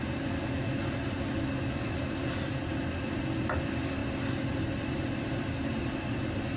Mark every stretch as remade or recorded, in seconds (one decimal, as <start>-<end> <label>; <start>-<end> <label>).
0.0-6.6 recorded